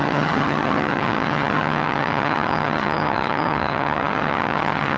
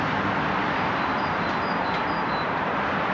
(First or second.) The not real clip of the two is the first